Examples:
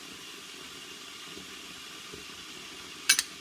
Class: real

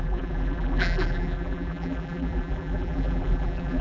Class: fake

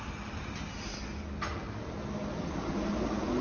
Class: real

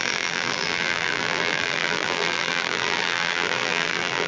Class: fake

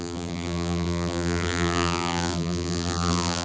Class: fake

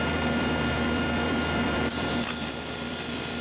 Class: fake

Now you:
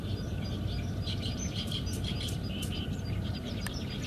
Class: fake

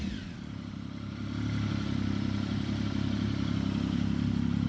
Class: real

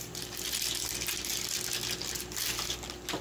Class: real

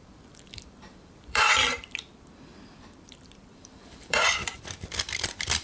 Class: fake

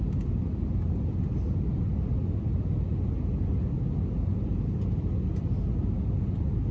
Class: real